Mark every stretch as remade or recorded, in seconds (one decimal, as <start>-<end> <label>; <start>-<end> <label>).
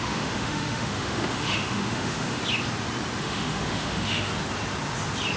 0.0-2.4 remade; 2.4-3.2 recorded; 3.2-4.3 remade; 4.3-5.4 recorded